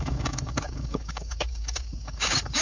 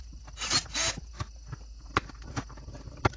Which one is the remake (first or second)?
first